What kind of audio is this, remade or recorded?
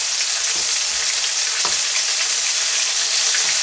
recorded